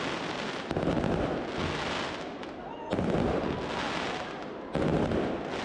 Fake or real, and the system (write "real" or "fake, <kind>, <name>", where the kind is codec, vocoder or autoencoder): real